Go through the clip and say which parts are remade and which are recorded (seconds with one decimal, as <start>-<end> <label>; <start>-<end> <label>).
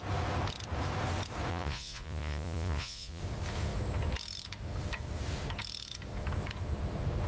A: 0.0-1.5 recorded; 1.5-3.2 remade; 3.2-7.3 recorded